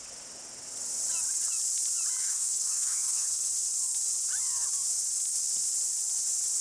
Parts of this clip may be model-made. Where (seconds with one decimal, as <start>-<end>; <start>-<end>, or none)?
2.2-3.7